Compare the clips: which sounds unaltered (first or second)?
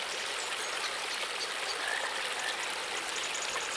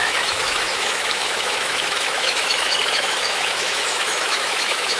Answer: first